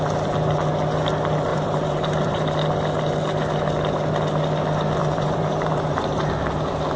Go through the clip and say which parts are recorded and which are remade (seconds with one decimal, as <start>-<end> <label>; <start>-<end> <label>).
0.0-1.5 recorded; 1.5-2.5 remade; 2.5-5.0 recorded; 5.0-6.3 remade; 6.3-7.0 recorded